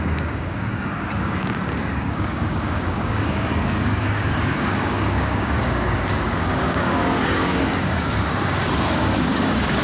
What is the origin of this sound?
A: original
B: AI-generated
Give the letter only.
B